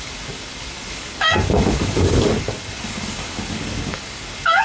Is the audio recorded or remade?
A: remade